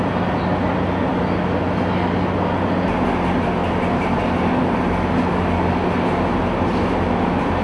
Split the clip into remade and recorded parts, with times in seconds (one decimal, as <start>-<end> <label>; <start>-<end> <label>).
0.0-7.6 recorded